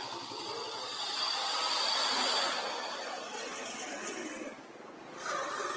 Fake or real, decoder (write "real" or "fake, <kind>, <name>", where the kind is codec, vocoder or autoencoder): real